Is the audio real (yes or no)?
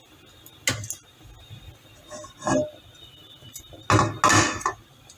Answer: yes